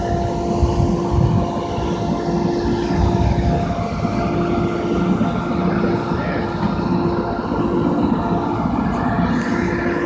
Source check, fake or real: real